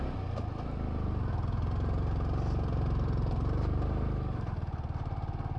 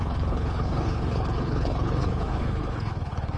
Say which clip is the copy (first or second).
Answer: second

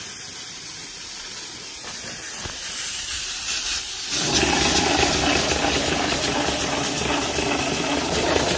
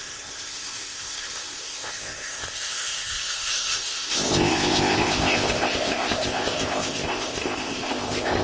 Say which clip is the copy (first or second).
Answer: second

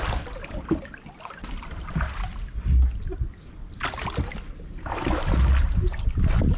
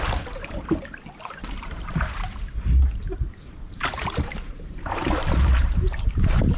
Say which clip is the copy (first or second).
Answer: second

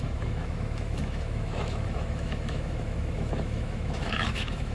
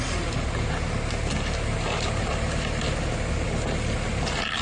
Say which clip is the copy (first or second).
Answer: first